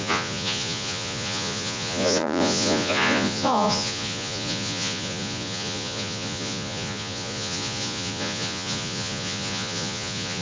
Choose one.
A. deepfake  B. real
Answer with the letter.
A